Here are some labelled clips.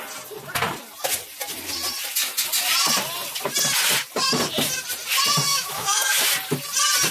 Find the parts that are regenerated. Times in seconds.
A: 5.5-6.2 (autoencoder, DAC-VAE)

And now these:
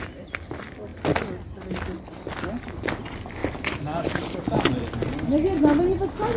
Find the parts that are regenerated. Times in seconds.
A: none

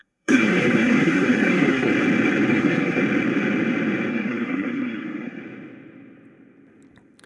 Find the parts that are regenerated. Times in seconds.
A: 0.0-1.9 (codec, SNAC); 2.5-3.0; 4.1-5.4

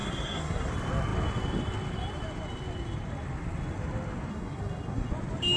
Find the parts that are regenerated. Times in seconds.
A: 0.0-0.7 (codec, SNAC); 4.3-5.1

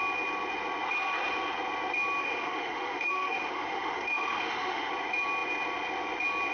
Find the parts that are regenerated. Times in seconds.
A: 2.2-4.9 (autoencoder, DAC-VAE)

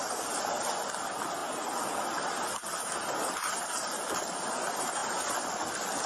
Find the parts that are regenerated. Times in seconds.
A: none

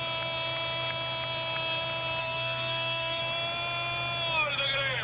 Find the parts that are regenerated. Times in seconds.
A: 2.2-3.2 (codec, SNAC)

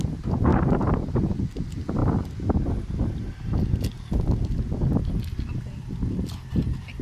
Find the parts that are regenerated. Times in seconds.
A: 0.5-1.4 (vocoder, BigVGAN v2)